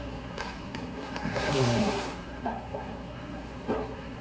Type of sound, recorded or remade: remade